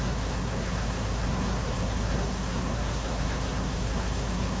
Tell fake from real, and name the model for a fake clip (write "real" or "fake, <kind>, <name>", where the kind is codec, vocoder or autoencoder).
fake, codec, SNAC